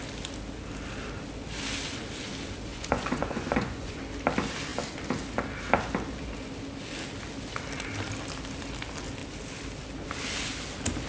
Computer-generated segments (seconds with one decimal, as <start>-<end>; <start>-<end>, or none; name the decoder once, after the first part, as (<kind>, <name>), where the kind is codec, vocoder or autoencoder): 2.7-4.0 (vocoder, Vocos)